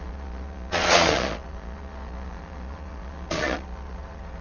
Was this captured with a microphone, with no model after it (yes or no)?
no